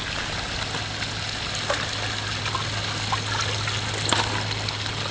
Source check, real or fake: real